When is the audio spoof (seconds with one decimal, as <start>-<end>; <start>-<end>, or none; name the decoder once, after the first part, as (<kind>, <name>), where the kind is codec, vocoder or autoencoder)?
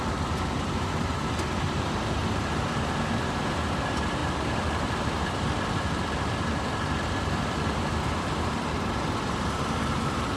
0.0-2.2 (vocoder, BigVGAN v2); 3.2-4.2; 9.2-10.4